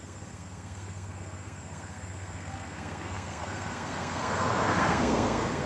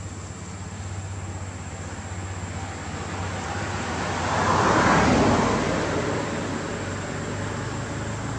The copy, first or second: first